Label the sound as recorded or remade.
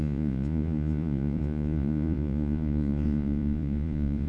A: remade